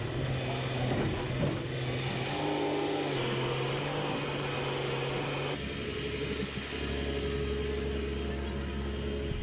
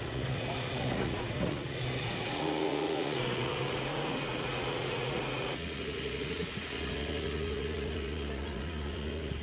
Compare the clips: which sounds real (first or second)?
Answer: first